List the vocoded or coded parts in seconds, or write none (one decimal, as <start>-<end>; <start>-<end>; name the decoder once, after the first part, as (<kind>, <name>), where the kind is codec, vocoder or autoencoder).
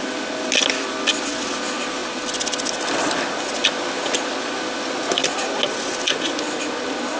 none